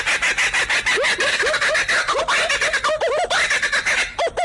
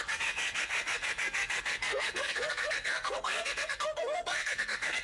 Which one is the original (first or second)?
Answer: first